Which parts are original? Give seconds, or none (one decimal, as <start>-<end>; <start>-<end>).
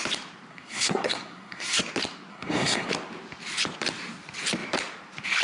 0.0-0.5; 1.8-2.3; 2.9-5.4